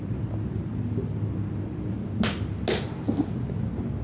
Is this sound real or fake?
real